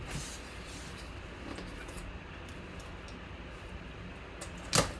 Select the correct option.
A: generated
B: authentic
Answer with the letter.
B